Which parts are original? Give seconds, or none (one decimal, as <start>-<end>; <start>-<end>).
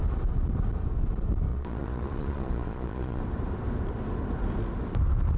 0.0-1.5; 3.2-5.4